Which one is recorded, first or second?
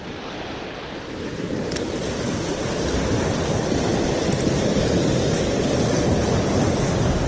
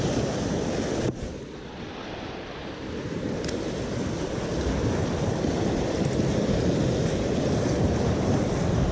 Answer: first